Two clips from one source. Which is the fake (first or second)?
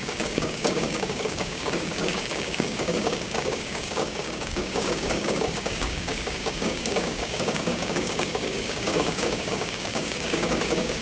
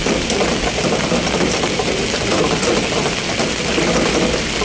first